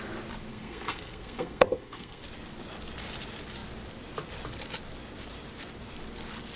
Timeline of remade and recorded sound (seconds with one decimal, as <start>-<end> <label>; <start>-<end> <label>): 0.0-0.5 recorded; 0.5-2.2 remade; 2.2-6.6 recorded